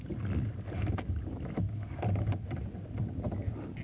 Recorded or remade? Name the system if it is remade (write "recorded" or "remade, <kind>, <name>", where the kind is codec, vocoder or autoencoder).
recorded